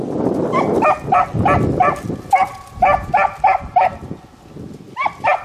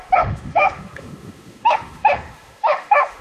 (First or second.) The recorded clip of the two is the first